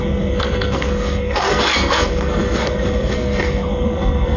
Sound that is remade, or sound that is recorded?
remade